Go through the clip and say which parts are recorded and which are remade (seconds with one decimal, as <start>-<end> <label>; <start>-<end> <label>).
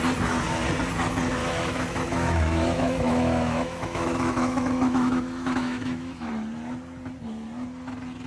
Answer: 0.0-1.4 recorded; 1.4-6.3 remade; 6.3-8.3 recorded